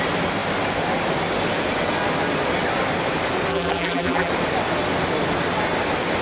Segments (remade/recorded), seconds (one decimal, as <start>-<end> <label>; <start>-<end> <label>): 0.0-3.5 recorded; 3.5-4.3 remade; 4.3-6.2 recorded